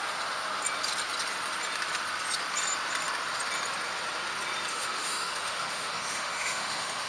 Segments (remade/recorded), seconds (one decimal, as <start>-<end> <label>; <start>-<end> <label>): 0.0-4.7 recorded; 4.7-7.1 remade